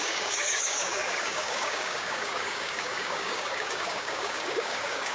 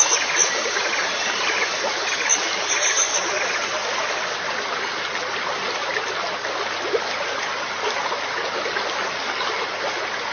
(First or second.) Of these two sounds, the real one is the second